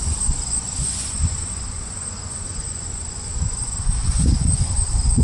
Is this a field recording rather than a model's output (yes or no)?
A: no